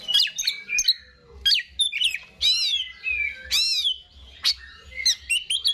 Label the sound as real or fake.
real